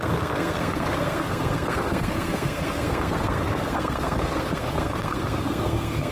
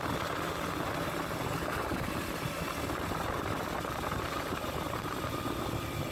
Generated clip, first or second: first